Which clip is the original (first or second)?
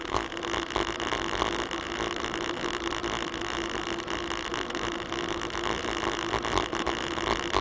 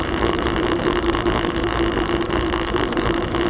first